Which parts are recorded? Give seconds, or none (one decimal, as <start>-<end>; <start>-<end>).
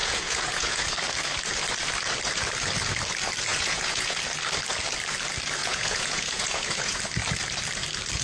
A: 0.9-3.5; 4.2-5.6; 7.0-8.2